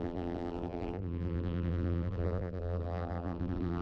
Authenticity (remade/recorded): remade